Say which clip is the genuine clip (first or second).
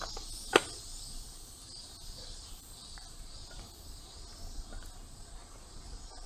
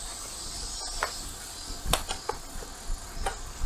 second